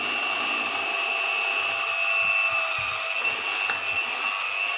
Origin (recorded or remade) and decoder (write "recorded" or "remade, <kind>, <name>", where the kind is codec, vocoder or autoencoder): recorded